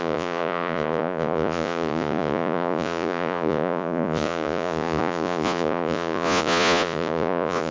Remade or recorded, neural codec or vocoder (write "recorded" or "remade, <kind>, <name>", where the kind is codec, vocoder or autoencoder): remade, vocoder, Vocos